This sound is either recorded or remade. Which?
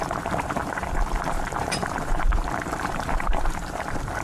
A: remade